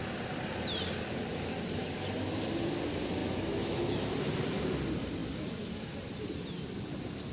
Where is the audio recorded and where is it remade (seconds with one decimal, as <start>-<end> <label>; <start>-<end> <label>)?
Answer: 0.0-3.2 recorded; 3.2-4.1 remade; 4.1-7.3 recorded